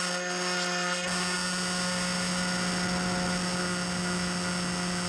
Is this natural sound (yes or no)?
yes